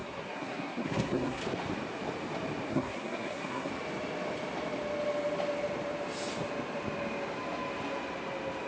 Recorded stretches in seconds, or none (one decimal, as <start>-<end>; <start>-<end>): 1.4-2.7; 3.7-8.7